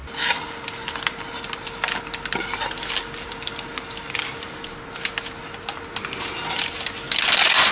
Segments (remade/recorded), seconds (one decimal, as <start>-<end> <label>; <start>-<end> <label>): 0.0-7.7 recorded